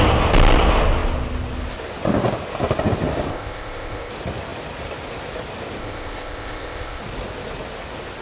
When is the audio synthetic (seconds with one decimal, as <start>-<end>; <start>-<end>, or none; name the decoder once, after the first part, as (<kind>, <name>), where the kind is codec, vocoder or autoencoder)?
3.3-4.1 (codec, ZipCodec); 5.8-7.0